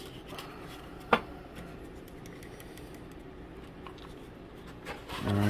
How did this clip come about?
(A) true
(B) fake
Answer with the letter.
A